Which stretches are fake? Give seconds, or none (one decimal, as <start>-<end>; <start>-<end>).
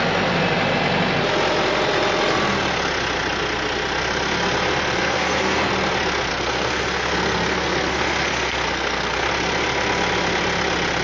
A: 5.0-5.7; 6.3-9.3